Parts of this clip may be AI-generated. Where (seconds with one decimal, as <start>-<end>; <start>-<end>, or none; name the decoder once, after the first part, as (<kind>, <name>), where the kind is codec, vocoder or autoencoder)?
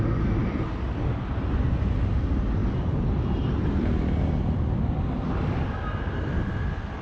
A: none